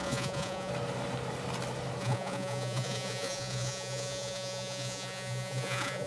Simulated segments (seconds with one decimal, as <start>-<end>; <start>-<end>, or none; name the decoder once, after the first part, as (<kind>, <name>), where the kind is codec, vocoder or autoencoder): 0.0-0.7 (vocoder, Vocos); 2.0-6.1